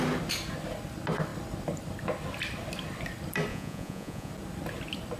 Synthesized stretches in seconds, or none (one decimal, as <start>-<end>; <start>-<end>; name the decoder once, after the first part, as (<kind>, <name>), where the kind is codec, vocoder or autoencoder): 3.5-4.3 (vocoder, Vocos)